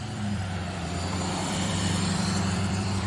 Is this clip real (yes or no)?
no